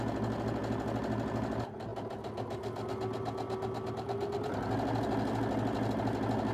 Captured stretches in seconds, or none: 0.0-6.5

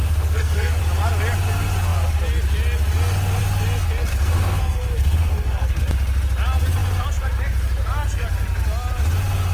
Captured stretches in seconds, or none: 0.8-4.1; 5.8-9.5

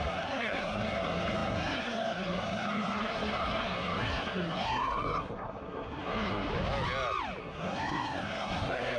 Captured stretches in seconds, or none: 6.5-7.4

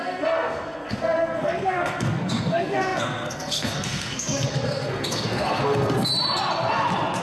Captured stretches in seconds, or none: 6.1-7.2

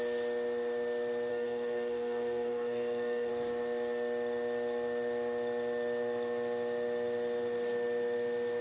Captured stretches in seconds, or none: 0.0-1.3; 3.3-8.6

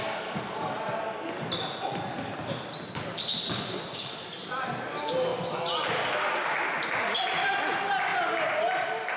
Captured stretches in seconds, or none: 0.0-9.2

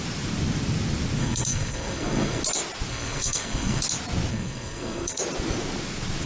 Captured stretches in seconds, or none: 0.0-1.2; 2.4-2.9; 3.8-4.3; 5.2-6.3

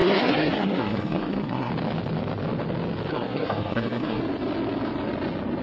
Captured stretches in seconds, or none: 1.7-3.1; 4.2-5.6